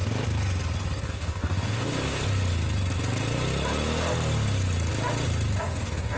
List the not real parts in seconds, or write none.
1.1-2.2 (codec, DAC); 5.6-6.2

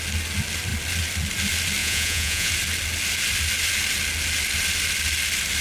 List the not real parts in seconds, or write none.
1.8-2.5 (vocoder, Vocos)

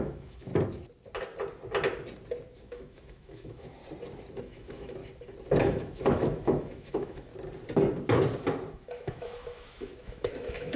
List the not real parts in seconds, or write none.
0.0-0.5 (autoencoder, DAC-VAE); 2.6-3.8; 4.4-5.0; 5.6-7.3; 8.7-10.8

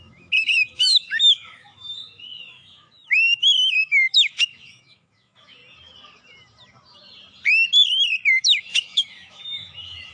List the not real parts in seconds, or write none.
0.0-5.6 (autoencoder, DAC-VAE); 8.3-10.1

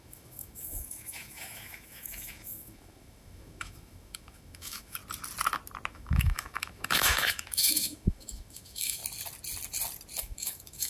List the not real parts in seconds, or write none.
0.0-5.0 (autoencoder, DAC-VAE); 5.9-9.0; 10.2-10.9

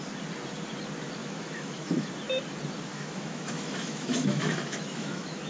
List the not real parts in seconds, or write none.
1.2-2.1 (autoencoder, DAC-VAE); 2.9-5.5